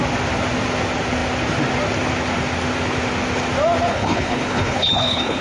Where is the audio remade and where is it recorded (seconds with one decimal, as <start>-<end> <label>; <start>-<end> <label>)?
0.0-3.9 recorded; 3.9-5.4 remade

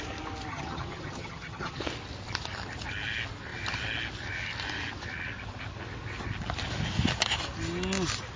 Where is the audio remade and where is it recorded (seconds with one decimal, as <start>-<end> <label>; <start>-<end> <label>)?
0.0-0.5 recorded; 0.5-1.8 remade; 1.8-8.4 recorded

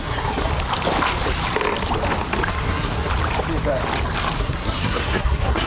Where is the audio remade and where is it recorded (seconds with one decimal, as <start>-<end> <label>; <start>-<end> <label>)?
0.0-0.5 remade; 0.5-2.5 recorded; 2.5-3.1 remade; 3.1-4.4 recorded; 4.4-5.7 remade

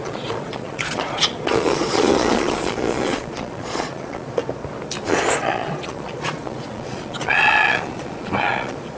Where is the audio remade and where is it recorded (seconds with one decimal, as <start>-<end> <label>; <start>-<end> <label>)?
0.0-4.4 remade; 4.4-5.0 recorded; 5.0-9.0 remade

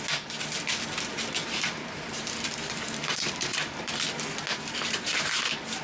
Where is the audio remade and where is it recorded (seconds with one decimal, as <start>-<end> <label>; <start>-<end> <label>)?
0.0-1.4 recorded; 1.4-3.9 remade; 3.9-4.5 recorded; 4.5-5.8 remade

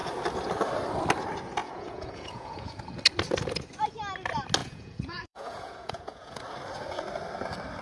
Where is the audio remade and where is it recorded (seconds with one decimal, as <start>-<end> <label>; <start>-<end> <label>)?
0.0-1.6 recorded; 1.6-2.8 remade; 2.8-4.6 recorded; 4.6-6.4 remade; 6.4-7.8 recorded

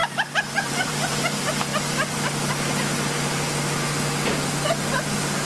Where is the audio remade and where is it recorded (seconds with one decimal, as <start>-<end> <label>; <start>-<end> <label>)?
0.0-1.1 remade; 1.1-5.5 recorded

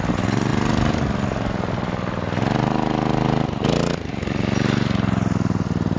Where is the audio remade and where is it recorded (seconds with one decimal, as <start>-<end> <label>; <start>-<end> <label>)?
0.0-6.0 recorded